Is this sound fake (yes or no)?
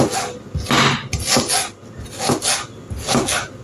no